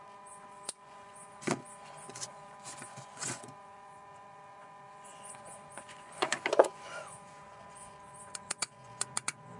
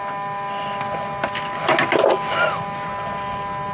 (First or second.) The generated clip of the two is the first